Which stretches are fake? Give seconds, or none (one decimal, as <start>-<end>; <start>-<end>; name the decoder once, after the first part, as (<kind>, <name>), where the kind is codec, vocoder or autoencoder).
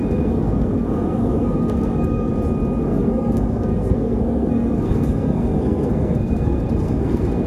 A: 0.0-2.3 (codec, SNAC); 2.8-7.5